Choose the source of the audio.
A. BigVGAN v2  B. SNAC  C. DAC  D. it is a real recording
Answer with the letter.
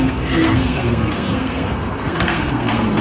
B